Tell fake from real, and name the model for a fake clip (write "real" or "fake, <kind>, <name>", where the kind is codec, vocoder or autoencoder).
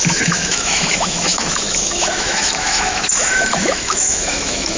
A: fake, autoencoder, DAC-VAE